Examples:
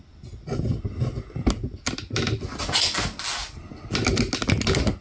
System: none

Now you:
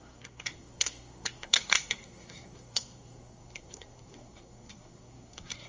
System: codec, SNAC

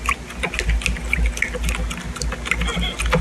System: none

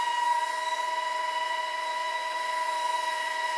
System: vocoder, Vocos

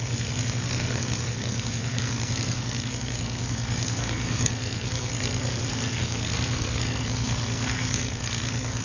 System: codec, SNAC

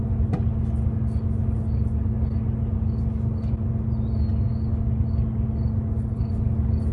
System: none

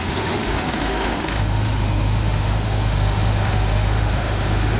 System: autoencoder, DAC-VAE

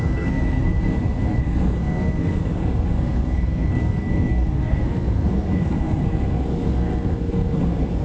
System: codec, SNAC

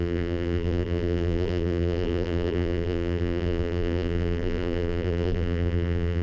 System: vocoder, BigVGAN v2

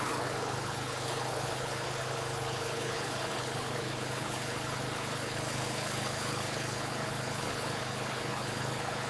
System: codec, HILCodec